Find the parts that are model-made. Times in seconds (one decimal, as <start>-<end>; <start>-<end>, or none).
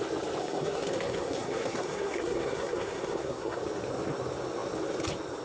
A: 0.4-3.6